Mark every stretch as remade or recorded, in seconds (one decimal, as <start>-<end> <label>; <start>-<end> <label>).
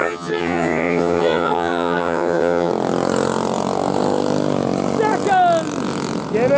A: 0.0-2.7 remade; 2.7-6.6 recorded